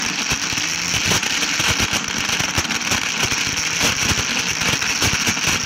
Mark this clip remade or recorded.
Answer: recorded